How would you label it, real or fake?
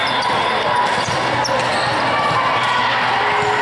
real